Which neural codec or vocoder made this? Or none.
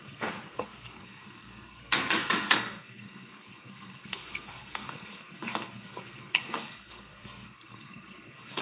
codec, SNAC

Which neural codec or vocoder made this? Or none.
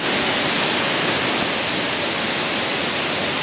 none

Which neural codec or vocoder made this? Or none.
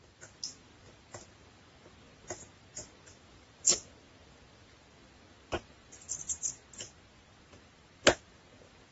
vocoder, BigVGAN v2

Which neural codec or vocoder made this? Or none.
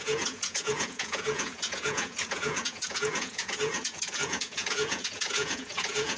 vocoder, Vocos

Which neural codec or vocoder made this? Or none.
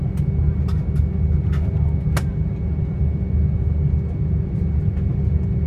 none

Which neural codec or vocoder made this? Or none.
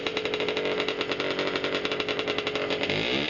vocoder, BigVGAN v2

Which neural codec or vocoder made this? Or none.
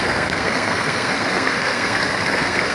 codec, SNAC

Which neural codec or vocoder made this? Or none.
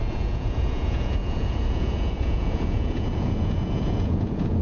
vocoder, Vocos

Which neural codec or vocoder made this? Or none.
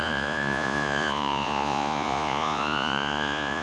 vocoder, Vocos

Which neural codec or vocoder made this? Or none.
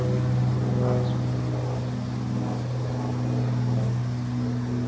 none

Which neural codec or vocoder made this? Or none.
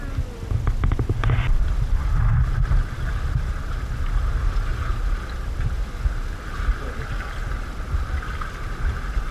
none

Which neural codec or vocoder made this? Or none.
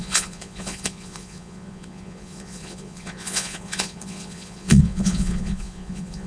vocoder, Vocos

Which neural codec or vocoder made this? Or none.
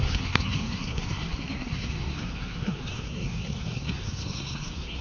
codec, SNAC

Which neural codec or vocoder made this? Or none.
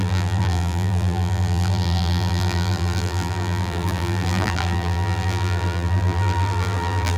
vocoder, BigVGAN v2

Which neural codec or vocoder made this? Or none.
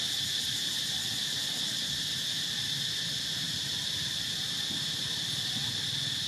none